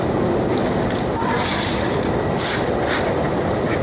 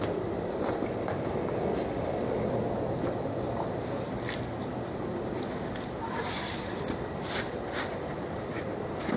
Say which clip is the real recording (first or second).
first